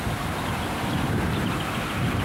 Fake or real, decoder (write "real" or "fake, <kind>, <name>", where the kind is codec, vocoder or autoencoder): real